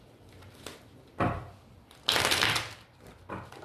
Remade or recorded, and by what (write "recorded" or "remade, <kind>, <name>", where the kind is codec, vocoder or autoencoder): recorded